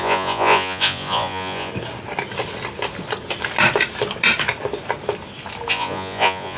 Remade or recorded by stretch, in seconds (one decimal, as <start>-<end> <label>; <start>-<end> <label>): 0.0-1.7 remade; 1.7-5.7 recorded; 5.7-6.6 remade